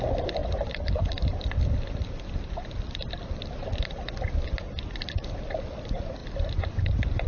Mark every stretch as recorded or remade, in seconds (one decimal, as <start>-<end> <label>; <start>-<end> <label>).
0.0-0.4 recorded; 0.4-3.3 remade; 3.3-6.2 recorded; 6.2-6.7 remade; 6.7-7.3 recorded